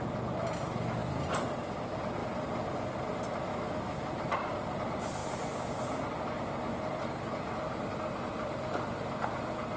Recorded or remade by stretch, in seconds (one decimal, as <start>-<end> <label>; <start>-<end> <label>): 0.0-3.5 recorded; 3.5-4.1 remade; 4.1-9.8 recorded